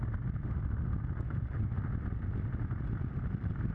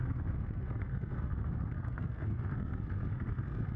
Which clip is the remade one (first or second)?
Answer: second